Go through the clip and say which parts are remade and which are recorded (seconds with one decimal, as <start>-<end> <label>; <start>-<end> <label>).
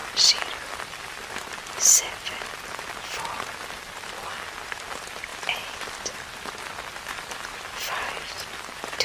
0.0-5.3 recorded; 5.3-6.0 remade; 6.0-9.0 recorded